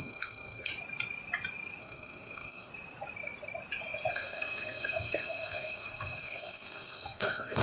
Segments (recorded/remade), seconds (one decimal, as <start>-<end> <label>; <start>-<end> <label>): 0.0-0.7 remade; 0.7-1.8 recorded; 1.8-2.7 remade; 2.7-4.1 recorded; 4.1-7.6 remade